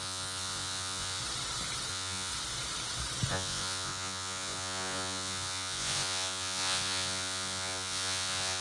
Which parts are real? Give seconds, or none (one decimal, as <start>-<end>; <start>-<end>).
1.2-1.9; 2.3-3.3